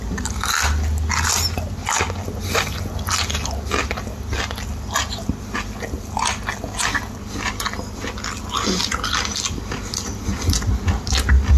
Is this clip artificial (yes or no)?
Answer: no